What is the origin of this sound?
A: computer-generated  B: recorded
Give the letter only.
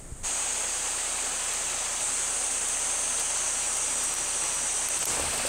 B